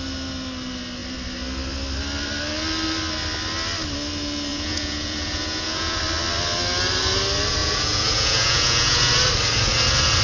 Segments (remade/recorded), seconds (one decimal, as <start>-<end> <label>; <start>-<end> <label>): 0.0-4.5 recorded; 4.5-6.0 remade; 6.0-7.6 recorded; 7.6-9.1 remade; 9.1-10.2 recorded